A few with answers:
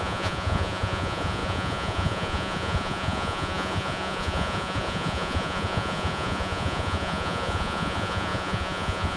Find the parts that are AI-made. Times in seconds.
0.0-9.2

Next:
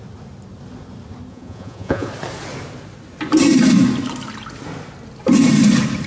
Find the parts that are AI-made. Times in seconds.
1.3-2.1

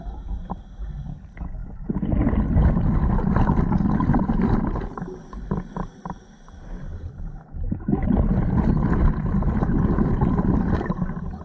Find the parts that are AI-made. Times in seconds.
none

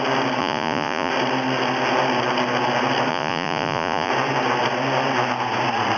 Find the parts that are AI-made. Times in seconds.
0.4-1.1; 3.1-4.1